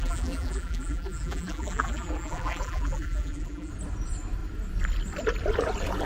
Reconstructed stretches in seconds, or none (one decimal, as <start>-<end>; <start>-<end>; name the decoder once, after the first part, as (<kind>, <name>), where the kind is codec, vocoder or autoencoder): 0.0-3.7 (vocoder, BigVGAN v2)